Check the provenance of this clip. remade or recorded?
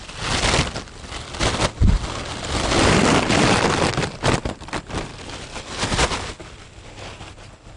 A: recorded